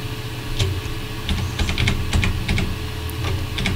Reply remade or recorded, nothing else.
recorded